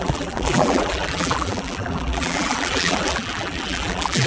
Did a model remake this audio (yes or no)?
yes